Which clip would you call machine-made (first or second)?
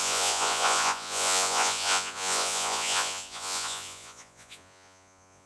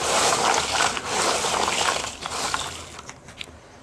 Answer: first